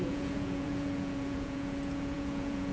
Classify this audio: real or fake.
fake